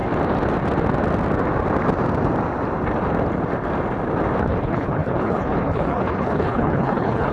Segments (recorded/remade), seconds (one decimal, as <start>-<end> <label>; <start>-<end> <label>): 0.0-4.4 recorded; 4.4-7.3 remade